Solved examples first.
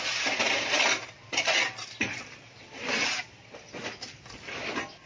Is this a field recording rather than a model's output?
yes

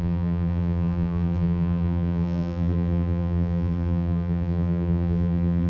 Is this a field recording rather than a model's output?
no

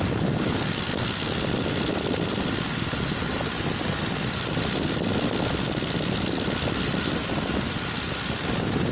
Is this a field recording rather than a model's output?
yes